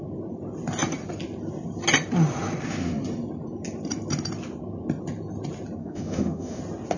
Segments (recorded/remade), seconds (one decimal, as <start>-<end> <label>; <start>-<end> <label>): 0.0-5.8 recorded; 5.8-6.6 remade; 6.6-7.0 recorded